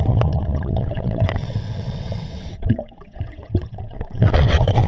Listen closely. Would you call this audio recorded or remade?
remade